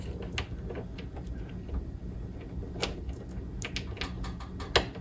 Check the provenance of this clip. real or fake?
real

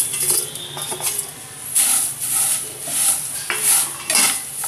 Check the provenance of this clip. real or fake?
real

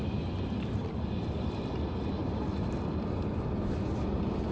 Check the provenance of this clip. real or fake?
fake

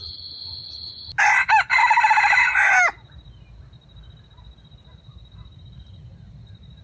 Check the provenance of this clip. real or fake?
real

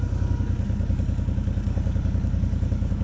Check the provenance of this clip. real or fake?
fake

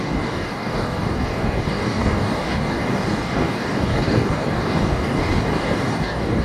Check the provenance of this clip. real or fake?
fake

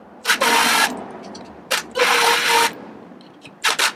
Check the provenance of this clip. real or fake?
real